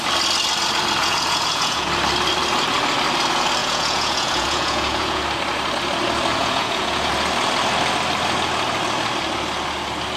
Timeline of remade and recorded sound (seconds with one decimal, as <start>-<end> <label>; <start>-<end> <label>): 0.0-1.0 recorded; 1.0-1.9 remade; 1.9-3.6 recorded; 3.6-5.2 remade; 5.2-6.4 recorded; 6.4-7.1 remade; 7.1-10.2 recorded